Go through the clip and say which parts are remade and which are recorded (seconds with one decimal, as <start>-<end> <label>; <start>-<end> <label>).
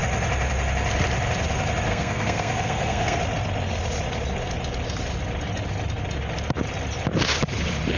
0.0-1.9 recorded; 1.9-3.2 remade; 3.2-8.0 recorded